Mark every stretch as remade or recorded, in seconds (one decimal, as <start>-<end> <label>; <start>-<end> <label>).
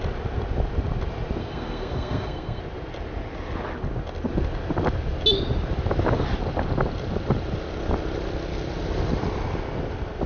0.0-1.4 recorded; 1.4-2.6 remade; 2.6-10.3 recorded